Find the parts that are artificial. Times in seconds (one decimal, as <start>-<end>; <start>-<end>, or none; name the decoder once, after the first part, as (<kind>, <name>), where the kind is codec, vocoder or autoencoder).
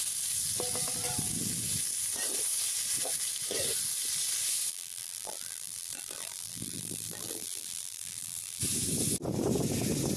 4.7-8.6 (vocoder, BigVGAN v2)